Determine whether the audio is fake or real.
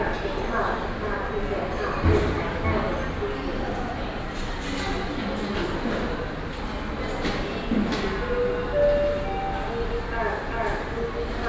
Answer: real